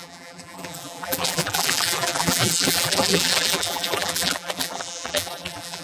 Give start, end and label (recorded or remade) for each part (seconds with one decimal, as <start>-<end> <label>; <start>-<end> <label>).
0.0-5.8 remade